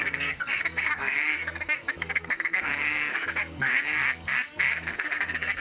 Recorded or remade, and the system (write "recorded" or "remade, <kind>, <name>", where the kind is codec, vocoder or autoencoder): remade, codec, SNAC